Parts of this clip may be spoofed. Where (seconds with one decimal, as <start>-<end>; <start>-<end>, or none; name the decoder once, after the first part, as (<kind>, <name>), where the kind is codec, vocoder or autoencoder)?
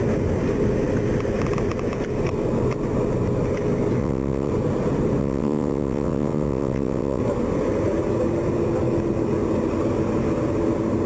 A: 4.0-4.5 (vocoder, WaveNeXt); 5.2-7.2